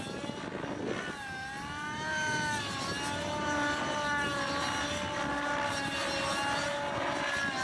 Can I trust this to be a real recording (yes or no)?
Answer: yes